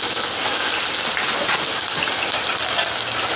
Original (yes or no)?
yes